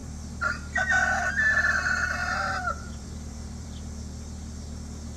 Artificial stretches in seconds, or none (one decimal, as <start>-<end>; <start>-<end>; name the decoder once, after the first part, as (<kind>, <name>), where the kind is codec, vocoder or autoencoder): 2.2-4.0 (vocoder, BigVGAN v2)